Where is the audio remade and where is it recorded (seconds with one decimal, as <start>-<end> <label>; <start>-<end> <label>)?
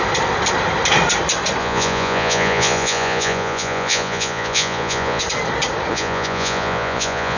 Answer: 0.0-1.6 recorded; 1.6-5.2 remade; 5.2-5.9 recorded; 5.9-7.4 remade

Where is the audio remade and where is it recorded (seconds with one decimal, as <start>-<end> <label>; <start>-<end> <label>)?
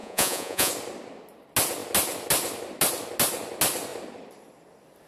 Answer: 0.0-0.7 remade; 0.7-5.1 recorded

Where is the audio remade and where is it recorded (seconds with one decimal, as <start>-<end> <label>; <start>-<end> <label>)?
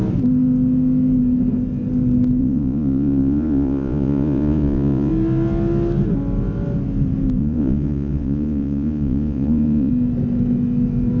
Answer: 0.0-2.4 recorded; 2.4-5.1 remade; 5.1-7.4 recorded; 7.4-9.9 remade; 9.9-11.2 recorded